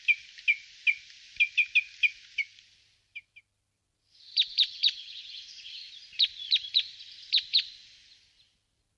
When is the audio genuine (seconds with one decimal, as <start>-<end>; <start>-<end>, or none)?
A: 0.0-2.5; 7.2-9.0